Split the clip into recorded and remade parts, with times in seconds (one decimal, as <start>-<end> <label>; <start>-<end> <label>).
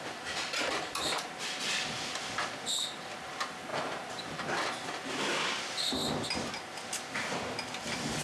0.0-3.7 recorded; 3.7-4.7 remade; 4.7-8.2 recorded